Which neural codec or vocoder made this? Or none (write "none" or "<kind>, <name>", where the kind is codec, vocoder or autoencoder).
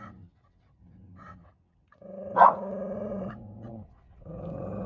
vocoder, WaveNeXt